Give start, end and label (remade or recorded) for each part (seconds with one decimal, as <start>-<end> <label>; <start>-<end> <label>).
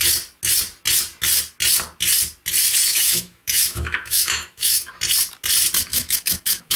0.0-2.9 recorded; 2.9-4.9 remade; 4.9-5.9 recorded; 5.9-6.8 remade